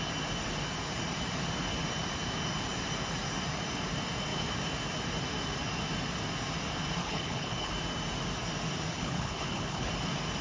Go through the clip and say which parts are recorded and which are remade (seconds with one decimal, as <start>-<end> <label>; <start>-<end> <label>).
0.0-7.0 recorded; 7.0-7.7 remade; 7.7-8.9 recorded; 8.9-9.9 remade; 9.9-10.4 recorded